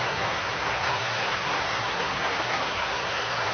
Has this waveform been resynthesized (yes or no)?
yes